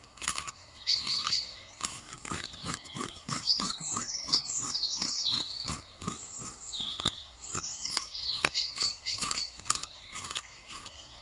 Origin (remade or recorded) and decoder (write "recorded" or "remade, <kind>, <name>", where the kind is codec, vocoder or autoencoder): remade, codec, SNAC